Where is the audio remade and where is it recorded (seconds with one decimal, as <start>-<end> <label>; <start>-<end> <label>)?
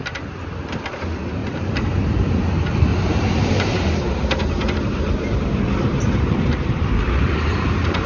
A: 0.0-1.4 recorded; 1.4-2.4 remade; 2.4-2.9 recorded; 2.9-8.1 remade